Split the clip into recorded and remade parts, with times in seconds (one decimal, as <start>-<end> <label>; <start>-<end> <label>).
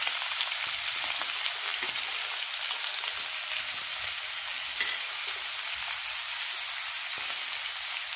0.0-8.2 recorded